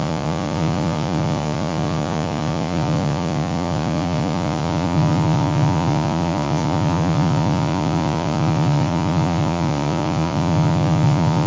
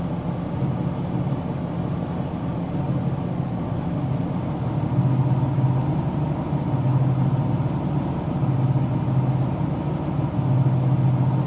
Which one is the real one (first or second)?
second